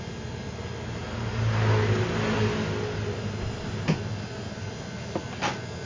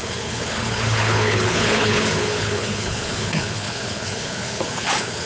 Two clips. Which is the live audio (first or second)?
first